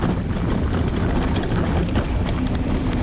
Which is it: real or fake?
real